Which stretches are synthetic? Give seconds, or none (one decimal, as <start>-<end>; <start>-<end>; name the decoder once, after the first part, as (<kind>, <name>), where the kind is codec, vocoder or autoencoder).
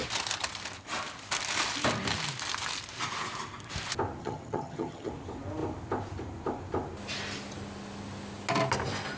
4.2-5.1 (vocoder, HiFi-GAN)